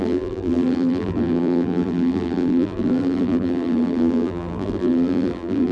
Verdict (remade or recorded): remade